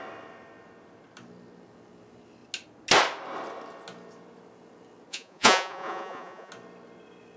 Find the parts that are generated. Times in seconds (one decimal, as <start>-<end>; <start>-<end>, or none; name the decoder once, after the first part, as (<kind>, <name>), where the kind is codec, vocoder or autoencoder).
5.1-6.5 (vocoder, Vocos)